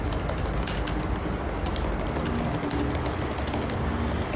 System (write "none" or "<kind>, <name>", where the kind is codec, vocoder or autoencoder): none